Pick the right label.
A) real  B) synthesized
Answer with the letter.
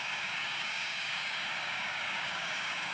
B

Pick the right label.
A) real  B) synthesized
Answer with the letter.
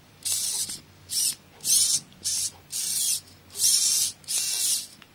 A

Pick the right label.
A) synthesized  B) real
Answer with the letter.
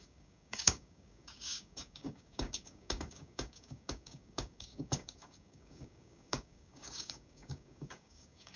A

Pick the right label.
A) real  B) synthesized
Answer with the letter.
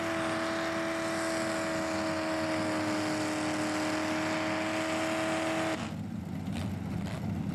A